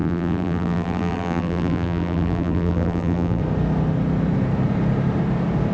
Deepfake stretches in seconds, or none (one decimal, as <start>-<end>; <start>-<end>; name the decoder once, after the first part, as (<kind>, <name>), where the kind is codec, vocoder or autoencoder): 0.0-3.4 (vocoder, BigVGAN v2)